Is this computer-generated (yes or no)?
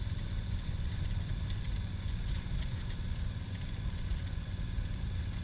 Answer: yes